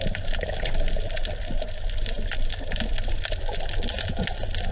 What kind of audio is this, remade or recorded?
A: recorded